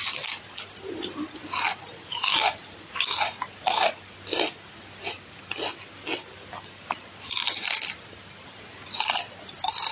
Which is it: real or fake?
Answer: real